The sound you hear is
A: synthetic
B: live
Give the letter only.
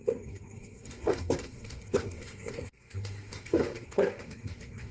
A